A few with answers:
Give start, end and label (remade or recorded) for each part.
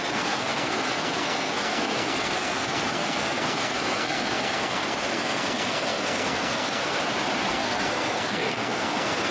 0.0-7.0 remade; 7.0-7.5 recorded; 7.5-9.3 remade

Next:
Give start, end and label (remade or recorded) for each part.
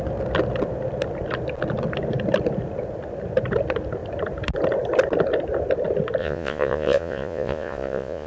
0.0-6.2 recorded; 6.2-8.3 remade